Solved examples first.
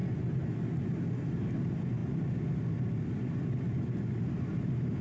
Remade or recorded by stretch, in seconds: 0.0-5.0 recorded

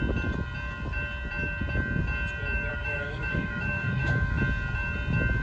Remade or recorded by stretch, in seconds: 0.0-2.7 recorded; 2.7-4.4 remade; 4.4-5.4 recorded

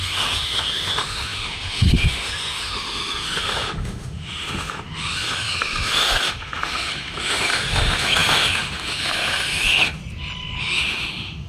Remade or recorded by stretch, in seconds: 0.0-10.0 remade; 10.0-10.6 recorded; 10.6-11.5 remade